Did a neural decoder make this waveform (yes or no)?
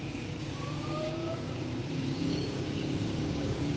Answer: yes